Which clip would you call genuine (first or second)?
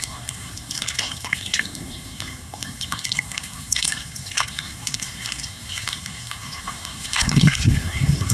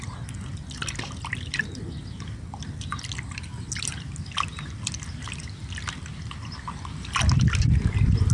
second